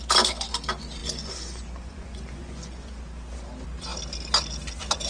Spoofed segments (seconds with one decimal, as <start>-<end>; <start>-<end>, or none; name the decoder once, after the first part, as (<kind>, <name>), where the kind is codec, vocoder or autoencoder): 1.0-2.9 (vocoder, Vocos)